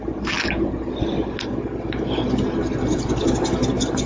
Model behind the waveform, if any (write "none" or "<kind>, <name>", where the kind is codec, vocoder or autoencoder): none